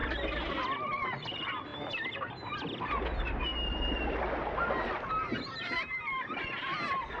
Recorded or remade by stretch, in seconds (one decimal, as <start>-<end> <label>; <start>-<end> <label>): 0.0-7.2 recorded